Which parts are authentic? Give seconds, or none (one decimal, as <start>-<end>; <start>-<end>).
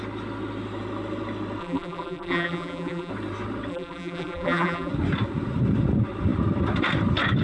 0.0-1.6; 3.1-3.7; 4.9-7.4